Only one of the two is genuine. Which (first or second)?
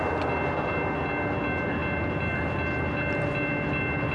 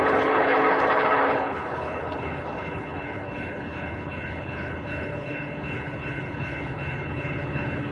first